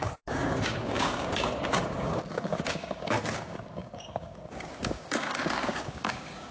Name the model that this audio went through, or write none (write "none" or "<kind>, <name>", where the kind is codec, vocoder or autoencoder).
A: codec, DAC